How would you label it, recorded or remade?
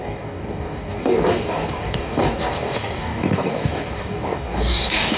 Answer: remade